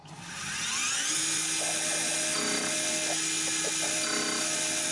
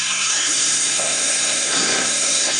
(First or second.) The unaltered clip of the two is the first